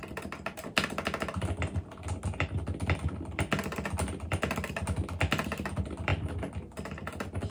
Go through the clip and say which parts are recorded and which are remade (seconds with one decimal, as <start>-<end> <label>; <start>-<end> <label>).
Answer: 0.0-7.5 recorded

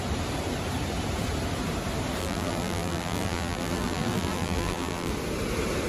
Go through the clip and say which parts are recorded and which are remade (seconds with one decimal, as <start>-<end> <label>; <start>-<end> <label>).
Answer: 0.0-2.2 recorded; 2.2-5.1 remade; 5.1-5.9 recorded

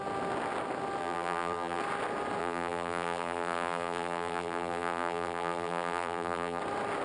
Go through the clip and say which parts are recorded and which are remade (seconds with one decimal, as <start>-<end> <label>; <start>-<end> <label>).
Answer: 0.0-1.0 recorded; 1.0-1.8 remade; 1.8-2.4 recorded; 2.4-6.6 remade; 6.6-7.0 recorded

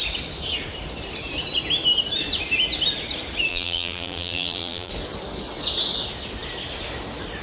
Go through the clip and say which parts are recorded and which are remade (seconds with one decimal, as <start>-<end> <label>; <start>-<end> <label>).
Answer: 0.0-3.5 recorded; 3.5-4.9 remade; 4.9-7.4 recorded

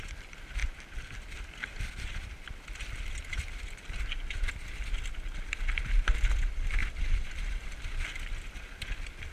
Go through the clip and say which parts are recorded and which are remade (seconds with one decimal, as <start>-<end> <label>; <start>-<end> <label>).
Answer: 0.0-6.8 recorded; 6.8-8.0 remade; 8.0-9.3 recorded

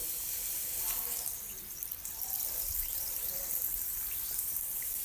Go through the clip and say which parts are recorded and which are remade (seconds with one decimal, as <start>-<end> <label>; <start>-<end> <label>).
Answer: 0.0-2.0 recorded; 2.0-5.0 remade